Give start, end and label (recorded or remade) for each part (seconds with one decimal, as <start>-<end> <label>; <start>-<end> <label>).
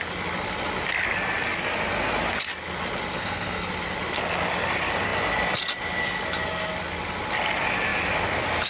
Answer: 0.0-3.1 recorded; 3.1-3.7 remade; 3.7-8.7 recorded